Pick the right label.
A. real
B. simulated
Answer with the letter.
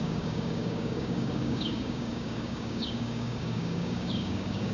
B